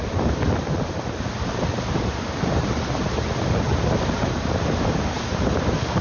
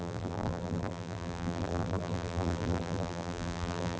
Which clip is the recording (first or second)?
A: first